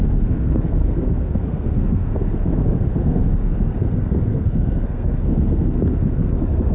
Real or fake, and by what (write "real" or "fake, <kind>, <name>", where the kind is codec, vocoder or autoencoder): fake, codec, SNAC